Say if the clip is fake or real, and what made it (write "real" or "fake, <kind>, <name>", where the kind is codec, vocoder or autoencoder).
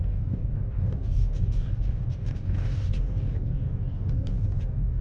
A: fake, codec, DAC